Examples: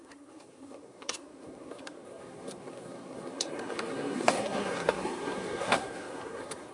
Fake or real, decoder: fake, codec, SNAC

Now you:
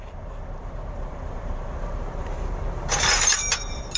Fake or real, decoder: fake, vocoder, BigVGAN v2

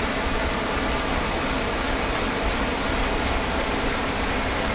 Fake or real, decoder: real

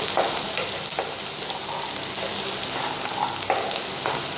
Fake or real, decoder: real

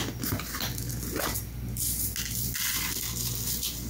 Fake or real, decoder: real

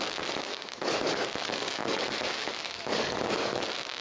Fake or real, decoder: fake, codec, DAC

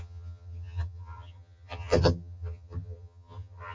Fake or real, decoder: fake, vocoder, HiFi-GAN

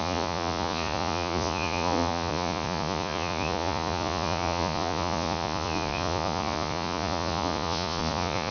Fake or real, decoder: fake, vocoder, Vocos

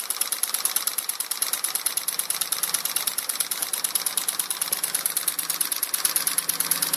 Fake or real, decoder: real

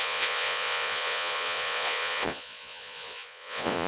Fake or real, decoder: fake, vocoder, Vocos